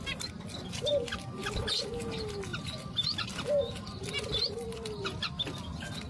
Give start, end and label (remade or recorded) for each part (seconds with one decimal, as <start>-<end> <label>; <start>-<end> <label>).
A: 0.0-2.5 recorded; 2.5-6.1 remade